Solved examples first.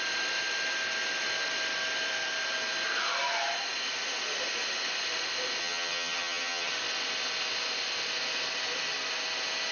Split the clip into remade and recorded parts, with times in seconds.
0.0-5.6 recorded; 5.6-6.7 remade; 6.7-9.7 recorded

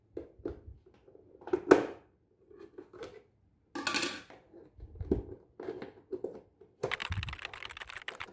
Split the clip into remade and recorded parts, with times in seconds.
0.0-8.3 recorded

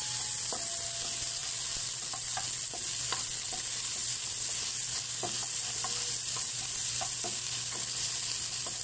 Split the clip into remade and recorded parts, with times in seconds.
0.0-8.8 recorded

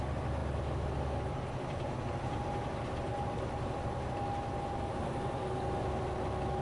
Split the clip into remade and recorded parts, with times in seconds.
0.0-6.6 recorded

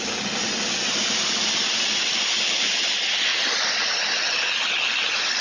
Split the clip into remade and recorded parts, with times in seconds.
0.0-5.4 recorded

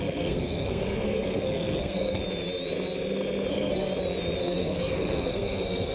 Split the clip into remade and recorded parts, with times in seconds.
0.0-2.2 remade; 2.2-3.5 recorded; 3.5-3.9 remade; 3.9-4.4 recorded; 4.4-5.9 remade